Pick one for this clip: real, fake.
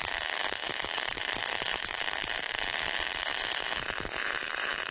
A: fake